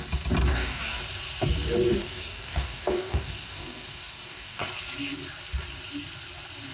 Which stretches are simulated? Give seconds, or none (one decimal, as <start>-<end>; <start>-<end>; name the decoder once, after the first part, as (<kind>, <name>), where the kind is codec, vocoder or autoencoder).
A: 0.5-1.0 (codec, DAC); 2.0-4.7